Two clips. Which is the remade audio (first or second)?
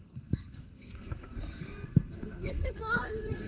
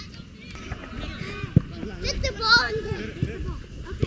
first